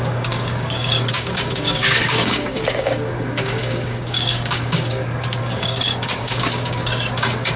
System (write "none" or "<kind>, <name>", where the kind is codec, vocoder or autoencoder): codec, DAC